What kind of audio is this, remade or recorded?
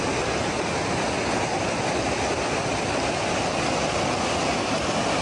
recorded